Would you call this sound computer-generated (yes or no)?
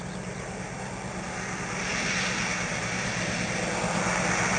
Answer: no